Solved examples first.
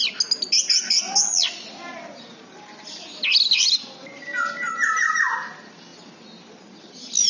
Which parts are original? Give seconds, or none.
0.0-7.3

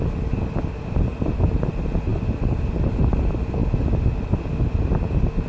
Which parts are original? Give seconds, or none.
0.0-1.1; 1.7-5.5

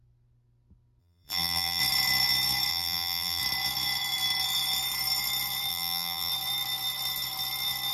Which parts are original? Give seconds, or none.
0.0-1.0; 1.8-2.7; 3.4-5.7; 6.3-7.9

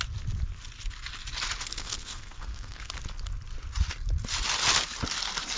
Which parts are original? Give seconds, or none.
0.0-1.8; 2.9-5.6

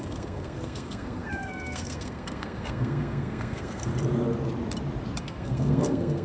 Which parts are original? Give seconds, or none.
3.9-5.2

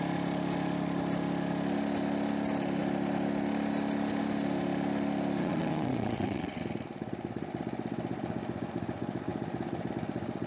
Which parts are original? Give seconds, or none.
0.0-5.4; 6.6-10.5

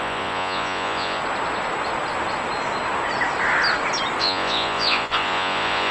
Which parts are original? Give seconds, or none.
1.2-4.2

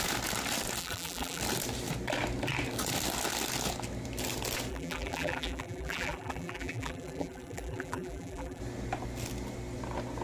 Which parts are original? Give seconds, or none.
0.0-0.8; 1.4-4.7; 8.6-10.2